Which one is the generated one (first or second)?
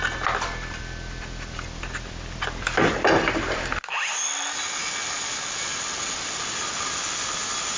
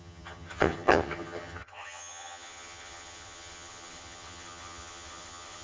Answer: second